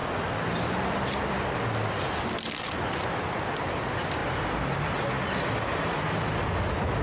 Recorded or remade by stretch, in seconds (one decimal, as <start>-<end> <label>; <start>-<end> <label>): 0.0-4.2 remade; 4.2-4.8 recorded; 4.8-7.0 remade